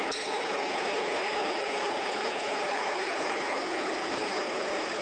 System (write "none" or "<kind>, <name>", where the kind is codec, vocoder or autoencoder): codec, HILCodec